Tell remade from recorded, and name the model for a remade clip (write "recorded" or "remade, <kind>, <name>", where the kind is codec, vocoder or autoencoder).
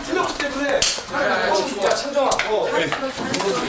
remade, vocoder, Vocos